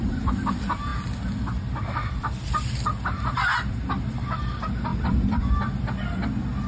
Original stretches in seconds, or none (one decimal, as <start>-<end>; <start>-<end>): 0.0-6.7